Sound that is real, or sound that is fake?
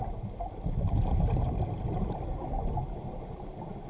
real